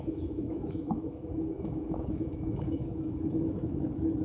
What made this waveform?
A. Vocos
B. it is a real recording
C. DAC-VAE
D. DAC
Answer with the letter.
C